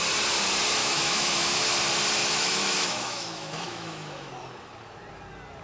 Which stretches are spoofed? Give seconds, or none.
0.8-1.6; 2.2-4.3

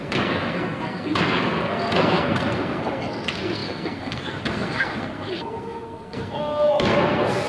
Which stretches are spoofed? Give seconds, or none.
0.0-7.5

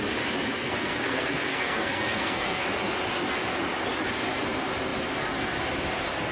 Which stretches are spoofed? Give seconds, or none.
0.5-2.6

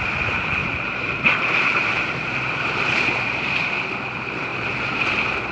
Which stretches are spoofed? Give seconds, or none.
0.6-3.9

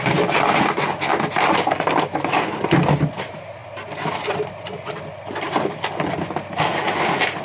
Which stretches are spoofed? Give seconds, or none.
none